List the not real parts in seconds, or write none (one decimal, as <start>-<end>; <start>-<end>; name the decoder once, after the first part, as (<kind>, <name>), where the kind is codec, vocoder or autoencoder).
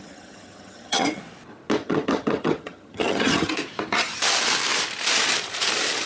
0.0-1.2 (vocoder, HiFi-GAN); 1.8-3.5